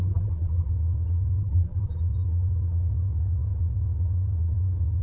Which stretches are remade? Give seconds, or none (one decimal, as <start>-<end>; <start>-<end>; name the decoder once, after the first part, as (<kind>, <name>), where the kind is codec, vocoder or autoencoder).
0.0-0.7 (vocoder, BigVGAN v2); 1.4-2.0